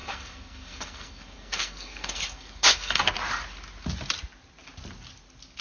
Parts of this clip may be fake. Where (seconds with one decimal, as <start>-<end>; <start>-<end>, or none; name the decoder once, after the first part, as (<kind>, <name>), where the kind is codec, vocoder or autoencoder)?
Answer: 0.0-3.0 (codec, SNAC)